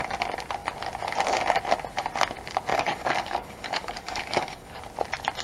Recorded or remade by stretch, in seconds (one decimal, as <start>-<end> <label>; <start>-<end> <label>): 0.0-2.7 recorded; 2.7-4.8 remade; 4.8-5.4 recorded